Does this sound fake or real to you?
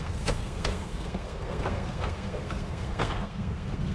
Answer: fake